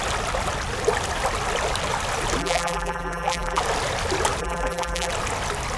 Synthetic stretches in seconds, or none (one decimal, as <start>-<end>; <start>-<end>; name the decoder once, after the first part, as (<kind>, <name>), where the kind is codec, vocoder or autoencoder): 2.4-3.6 (vocoder, BigVGAN v2); 4.4-5.1